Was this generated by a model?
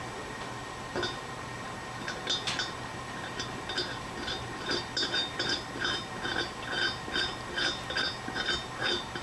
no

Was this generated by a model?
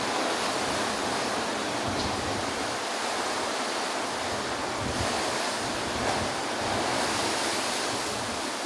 no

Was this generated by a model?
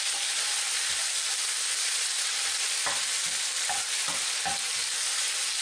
no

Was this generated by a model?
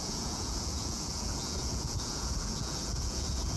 yes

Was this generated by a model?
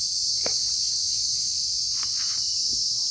no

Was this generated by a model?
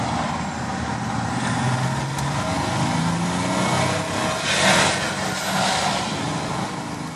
no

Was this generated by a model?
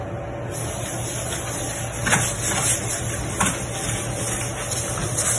no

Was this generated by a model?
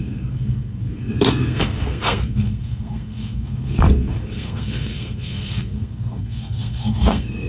yes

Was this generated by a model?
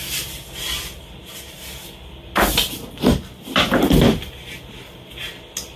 no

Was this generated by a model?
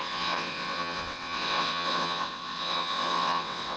yes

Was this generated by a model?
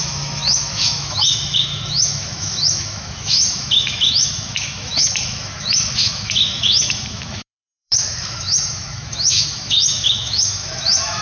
yes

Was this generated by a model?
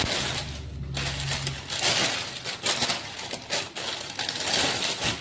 no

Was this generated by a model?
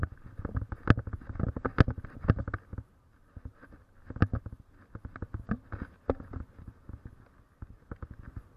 no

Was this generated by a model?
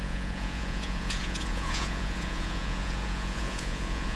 yes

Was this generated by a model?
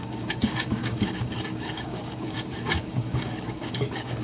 yes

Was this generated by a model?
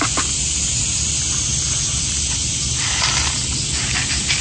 no